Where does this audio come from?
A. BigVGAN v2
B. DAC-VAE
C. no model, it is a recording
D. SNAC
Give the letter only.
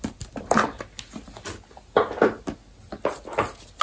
C